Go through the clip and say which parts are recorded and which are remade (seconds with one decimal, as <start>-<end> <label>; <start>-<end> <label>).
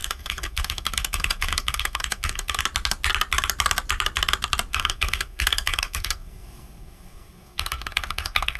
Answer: 0.0-2.6 remade; 2.6-4.7 recorded; 4.7-8.6 remade